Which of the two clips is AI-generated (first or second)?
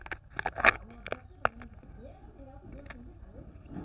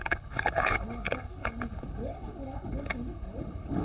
second